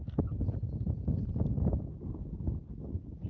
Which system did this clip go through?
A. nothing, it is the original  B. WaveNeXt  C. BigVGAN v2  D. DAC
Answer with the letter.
A